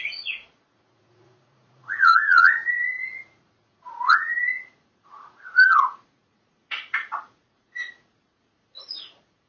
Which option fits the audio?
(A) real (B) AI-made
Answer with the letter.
B